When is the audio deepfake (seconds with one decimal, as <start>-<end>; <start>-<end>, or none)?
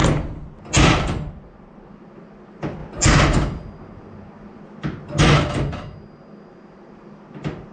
none